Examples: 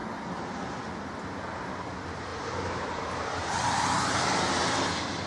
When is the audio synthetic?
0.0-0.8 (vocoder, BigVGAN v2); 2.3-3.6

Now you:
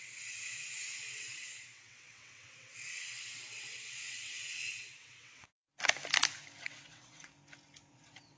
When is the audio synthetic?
0.0-5.7 (vocoder, WaveNeXt); 6.6-7.3; 7.9-8.4

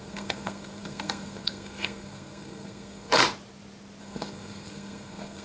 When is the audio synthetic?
0.0-3.2 (codec, SNAC); 4.0-5.4

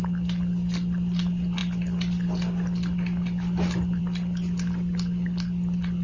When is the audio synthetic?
none

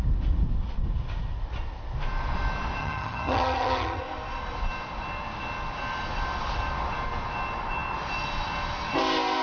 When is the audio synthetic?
2.8-4.0 (vocoder, HiFi-GAN)

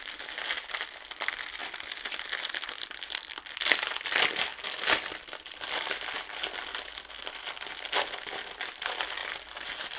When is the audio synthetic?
none

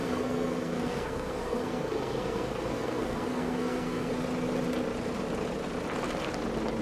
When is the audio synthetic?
0.0-4.1 (codec, SNAC)

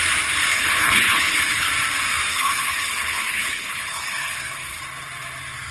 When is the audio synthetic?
0.5-1.7 (codec, HILCodec); 2.3-4.8